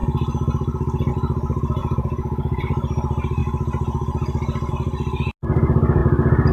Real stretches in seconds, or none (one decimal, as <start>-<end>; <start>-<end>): 0.0-1.8; 2.6-6.5